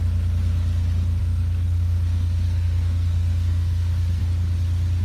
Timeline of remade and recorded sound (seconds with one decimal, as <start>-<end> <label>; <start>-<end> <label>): 0.0-1.2 recorded; 1.2-4.2 remade; 4.2-5.0 recorded